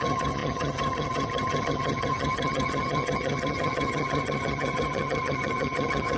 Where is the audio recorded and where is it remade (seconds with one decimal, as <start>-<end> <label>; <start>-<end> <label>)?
0.0-6.2 remade